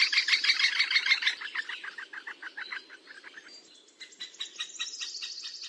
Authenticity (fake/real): real